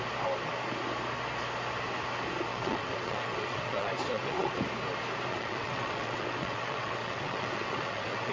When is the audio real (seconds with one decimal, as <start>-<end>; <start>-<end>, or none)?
0.0-2.5; 4.6-5.3